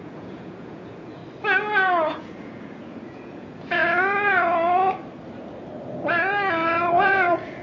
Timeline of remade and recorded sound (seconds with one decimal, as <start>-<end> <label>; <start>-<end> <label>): 0.0-1.2 remade; 1.2-2.2 recorded; 2.2-3.8 remade; 3.8-6.9 recorded; 6.9-7.6 remade